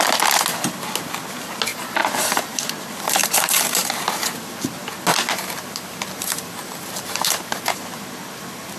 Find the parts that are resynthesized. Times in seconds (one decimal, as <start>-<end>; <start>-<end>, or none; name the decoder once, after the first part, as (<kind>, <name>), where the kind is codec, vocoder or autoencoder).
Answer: 1.7-2.7 (vocoder, BigVGAN v2); 3.2-4.5; 5.1-7.8